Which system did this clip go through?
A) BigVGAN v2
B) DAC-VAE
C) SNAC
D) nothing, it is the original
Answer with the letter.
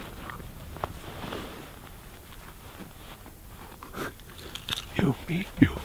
D